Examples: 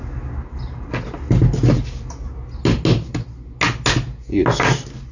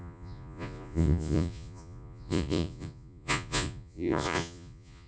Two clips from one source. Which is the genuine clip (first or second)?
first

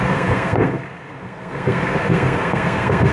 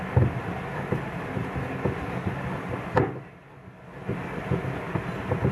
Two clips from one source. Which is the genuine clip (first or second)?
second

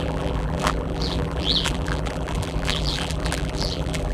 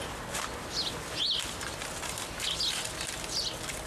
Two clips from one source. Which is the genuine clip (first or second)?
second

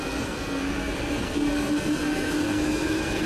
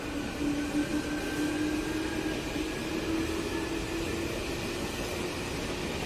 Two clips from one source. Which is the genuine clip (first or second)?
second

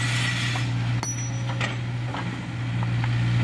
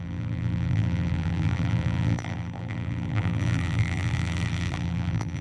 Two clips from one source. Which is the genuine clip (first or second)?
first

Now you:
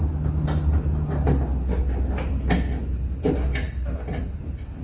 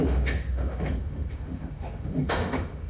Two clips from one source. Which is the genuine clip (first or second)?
first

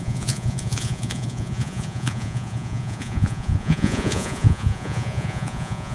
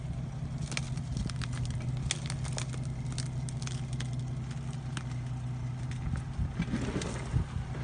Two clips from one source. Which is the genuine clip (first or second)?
second